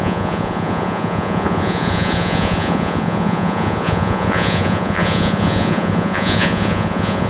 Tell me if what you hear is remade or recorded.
remade